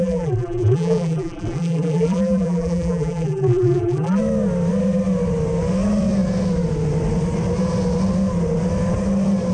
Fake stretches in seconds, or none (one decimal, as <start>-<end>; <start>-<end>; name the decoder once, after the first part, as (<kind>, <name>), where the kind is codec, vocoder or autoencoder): 0.0-4.2 (vocoder, BigVGAN v2)